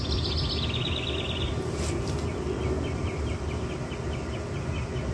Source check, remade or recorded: recorded